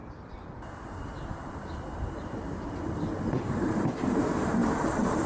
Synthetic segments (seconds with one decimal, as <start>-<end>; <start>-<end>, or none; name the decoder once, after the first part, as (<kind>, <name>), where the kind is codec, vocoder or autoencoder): 1.4-5.3 (vocoder, BigVGAN v2)